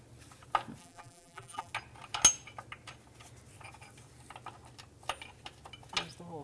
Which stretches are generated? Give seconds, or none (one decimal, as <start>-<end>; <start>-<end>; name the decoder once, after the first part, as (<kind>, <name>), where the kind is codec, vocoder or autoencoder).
0.8-1.7 (vocoder, BigVGAN v2)